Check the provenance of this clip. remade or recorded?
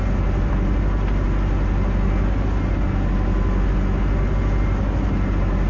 recorded